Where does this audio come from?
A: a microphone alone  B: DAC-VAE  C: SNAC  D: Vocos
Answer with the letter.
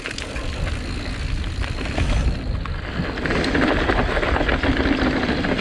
A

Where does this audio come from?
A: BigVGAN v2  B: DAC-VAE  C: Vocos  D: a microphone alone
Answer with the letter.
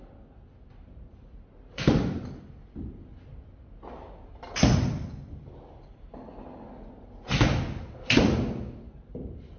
D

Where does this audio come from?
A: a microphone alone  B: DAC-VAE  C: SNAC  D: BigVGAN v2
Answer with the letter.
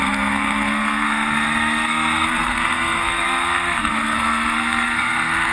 C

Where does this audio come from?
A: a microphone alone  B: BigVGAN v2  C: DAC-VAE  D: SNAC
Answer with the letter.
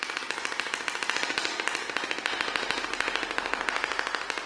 A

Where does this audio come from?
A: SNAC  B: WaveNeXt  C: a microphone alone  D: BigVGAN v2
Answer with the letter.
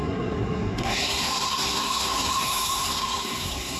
A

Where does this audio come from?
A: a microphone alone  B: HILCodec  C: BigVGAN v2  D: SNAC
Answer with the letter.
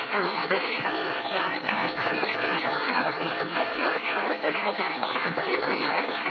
D